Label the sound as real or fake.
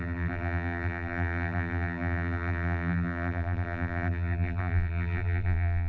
fake